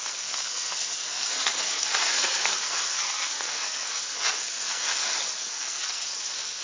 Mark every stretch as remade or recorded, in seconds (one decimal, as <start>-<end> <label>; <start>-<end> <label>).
0.0-6.6 remade